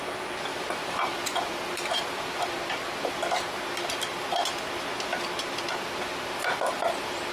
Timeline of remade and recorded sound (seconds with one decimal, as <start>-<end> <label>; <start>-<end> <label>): 0.0-0.5 recorded; 0.5-2.5 remade; 2.5-7.3 recorded